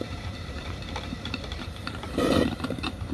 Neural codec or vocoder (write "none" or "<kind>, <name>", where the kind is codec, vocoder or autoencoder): vocoder, BigVGAN v2